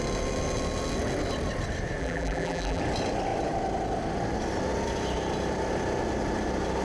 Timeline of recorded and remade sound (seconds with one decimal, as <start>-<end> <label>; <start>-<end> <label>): 0.0-2.0 recorded; 2.0-2.8 remade; 2.8-6.8 recorded